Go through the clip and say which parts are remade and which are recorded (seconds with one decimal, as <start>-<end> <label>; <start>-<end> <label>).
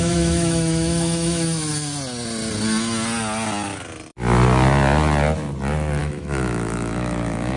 0.0-1.7 remade; 1.7-6.0 recorded; 6.0-7.6 remade